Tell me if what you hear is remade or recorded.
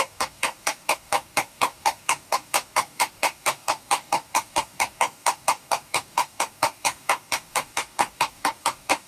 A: remade